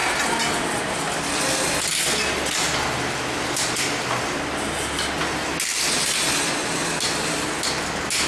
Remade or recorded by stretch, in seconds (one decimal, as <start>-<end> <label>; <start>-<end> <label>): 0.0-8.3 recorded